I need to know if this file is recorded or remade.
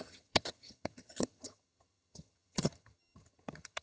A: remade